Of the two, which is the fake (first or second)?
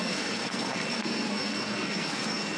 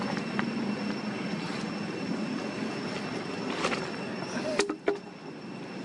first